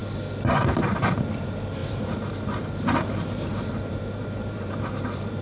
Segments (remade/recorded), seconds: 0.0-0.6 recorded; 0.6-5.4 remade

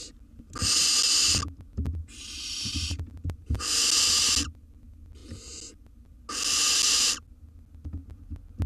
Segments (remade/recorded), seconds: 0.0-2.0 recorded; 2.0-3.6 remade; 3.6-8.7 recorded

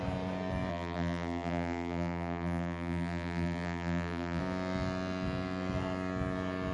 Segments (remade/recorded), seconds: 0.0-0.7 recorded; 0.7-4.4 remade; 4.4-6.7 recorded

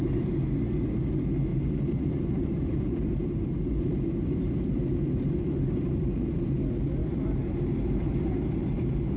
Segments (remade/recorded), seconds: 0.0-1.5 recorded; 1.5-6.5 remade; 6.5-7.0 recorded; 7.0-8.3 remade; 8.3-9.2 recorded

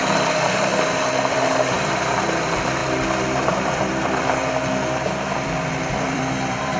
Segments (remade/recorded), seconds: 0.0-0.7 remade; 0.7-1.3 recorded; 1.3-2.8 remade; 2.8-3.7 recorded; 3.7-4.4 remade; 4.4-5.3 recorded; 5.3-6.8 remade

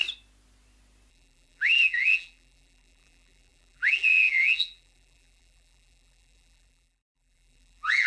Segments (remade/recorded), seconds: 0.0-1.1 recorded; 1.1-8.1 remade